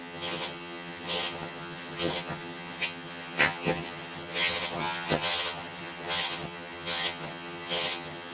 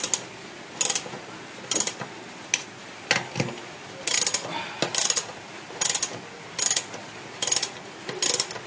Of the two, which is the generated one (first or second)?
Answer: first